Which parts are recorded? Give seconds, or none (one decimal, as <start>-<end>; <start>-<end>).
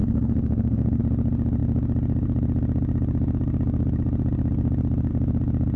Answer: 1.0-5.8